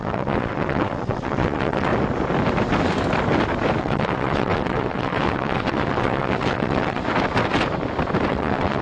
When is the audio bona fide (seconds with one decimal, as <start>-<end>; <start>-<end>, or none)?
1.9-3.8; 7.0-8.3